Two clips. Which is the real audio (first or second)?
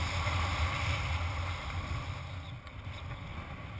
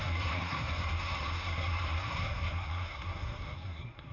first